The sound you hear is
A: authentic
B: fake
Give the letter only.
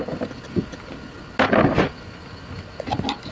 A